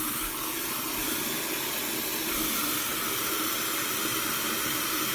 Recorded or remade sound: recorded